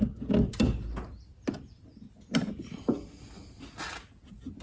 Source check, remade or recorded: recorded